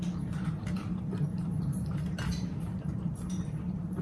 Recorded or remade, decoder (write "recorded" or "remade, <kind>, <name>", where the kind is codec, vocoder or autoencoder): remade, vocoder, BigVGAN v2